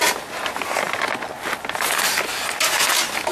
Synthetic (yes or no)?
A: no